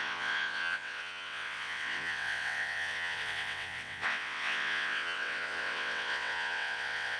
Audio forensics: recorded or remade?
remade